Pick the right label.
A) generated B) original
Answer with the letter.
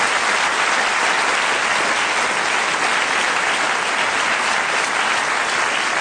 B